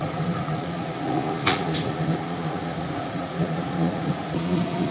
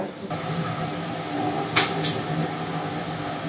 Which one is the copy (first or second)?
first